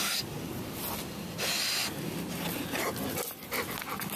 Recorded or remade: recorded